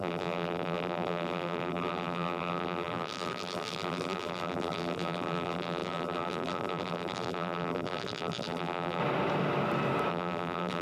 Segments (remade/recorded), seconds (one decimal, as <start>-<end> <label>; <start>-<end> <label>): 0.0-9.0 remade; 9.0-10.1 recorded; 10.1-10.8 remade